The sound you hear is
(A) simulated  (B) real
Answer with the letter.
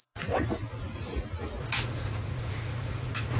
A